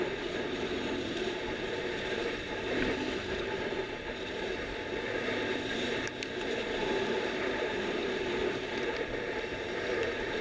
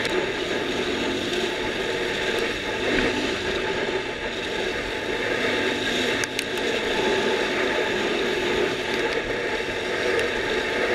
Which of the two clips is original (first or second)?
second